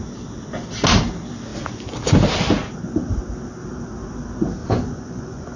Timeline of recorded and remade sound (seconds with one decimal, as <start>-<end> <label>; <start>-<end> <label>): 0.0-4.6 recorded; 4.6-5.6 remade